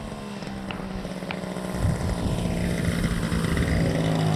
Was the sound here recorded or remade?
recorded